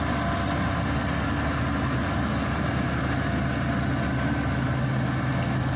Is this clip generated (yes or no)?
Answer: no